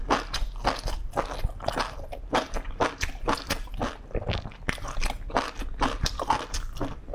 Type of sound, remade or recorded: recorded